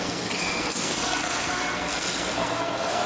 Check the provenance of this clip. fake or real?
fake